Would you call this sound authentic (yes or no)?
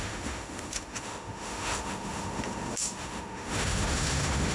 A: no